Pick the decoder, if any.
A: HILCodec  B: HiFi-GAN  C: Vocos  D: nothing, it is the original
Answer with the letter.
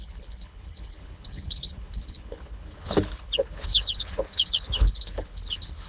A